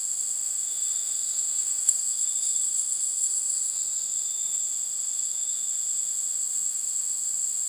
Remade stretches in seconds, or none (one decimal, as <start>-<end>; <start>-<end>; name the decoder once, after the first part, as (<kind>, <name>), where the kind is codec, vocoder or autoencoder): 0.0-7.7 (autoencoder, DAC-VAE)